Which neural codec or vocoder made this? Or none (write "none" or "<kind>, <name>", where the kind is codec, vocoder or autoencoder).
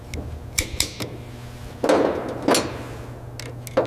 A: none